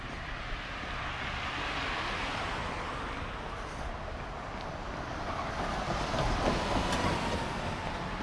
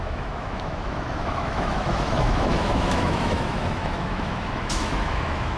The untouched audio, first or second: first